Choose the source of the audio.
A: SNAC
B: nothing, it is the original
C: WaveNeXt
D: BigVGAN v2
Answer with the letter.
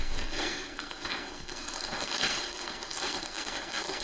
A